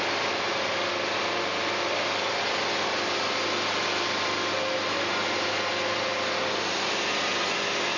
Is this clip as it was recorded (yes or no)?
yes